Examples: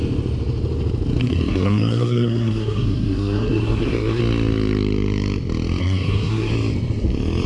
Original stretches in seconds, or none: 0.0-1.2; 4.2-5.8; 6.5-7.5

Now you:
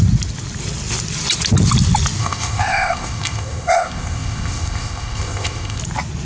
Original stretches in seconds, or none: 0.0-2.2; 5.8-6.2

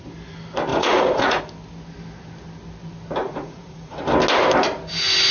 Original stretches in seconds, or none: 0.0-0.7; 1.4-3.2; 4.0-5.3

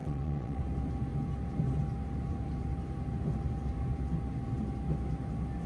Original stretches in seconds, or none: 0.6-5.7

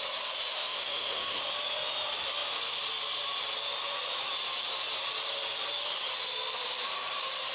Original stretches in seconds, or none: 0.0-0.5; 1.4-7.5

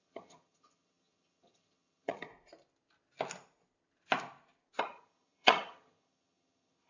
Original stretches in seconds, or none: 2.3-4.8